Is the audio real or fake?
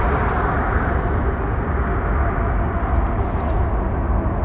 real